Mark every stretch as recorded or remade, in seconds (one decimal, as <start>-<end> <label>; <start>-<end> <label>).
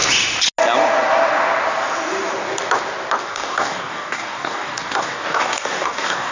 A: 0.0-3.2 recorded; 3.2-6.3 remade